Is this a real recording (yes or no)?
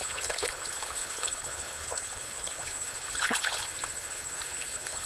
no